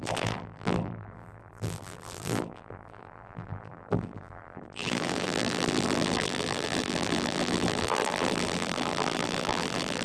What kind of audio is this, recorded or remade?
remade